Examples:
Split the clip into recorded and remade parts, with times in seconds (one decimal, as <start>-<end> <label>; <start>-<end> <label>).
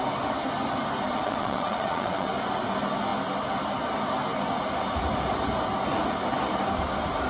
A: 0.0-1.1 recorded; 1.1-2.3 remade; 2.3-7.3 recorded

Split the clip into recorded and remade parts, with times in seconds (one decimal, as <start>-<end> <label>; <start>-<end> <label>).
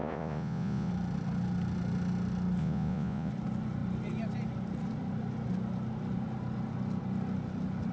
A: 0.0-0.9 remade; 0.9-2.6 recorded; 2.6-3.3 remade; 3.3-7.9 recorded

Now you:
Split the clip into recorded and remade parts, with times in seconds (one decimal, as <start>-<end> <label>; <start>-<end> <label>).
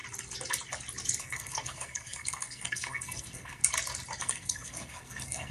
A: 0.0-1.2 recorded; 1.2-3.6 remade; 3.6-4.2 recorded; 4.2-5.5 remade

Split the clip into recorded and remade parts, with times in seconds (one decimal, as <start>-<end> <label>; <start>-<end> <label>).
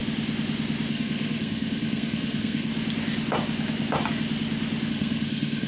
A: 0.0-0.9 recorded; 0.9-2.7 remade; 2.7-4.9 recorded; 4.9-5.7 remade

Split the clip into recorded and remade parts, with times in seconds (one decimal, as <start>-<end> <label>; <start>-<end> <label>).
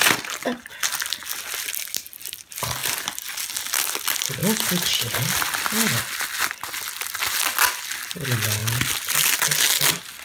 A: 0.0-10.2 recorded